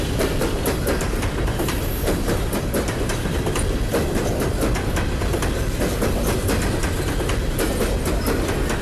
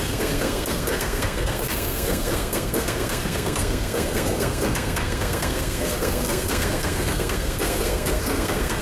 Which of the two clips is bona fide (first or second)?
first